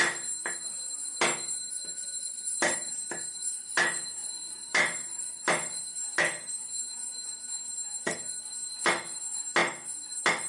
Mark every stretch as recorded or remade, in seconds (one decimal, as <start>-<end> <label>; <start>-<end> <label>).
0.0-1.9 recorded; 1.9-3.8 remade; 3.8-4.2 recorded; 4.2-6.5 remade; 6.5-10.5 recorded